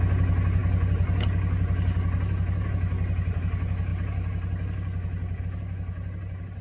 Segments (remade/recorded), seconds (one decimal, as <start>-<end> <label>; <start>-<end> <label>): 0.0-6.6 recorded